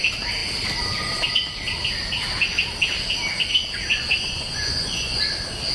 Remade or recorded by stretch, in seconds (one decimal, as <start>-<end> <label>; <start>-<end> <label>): 0.0-3.9 recorded; 3.9-5.2 remade; 5.2-5.7 recorded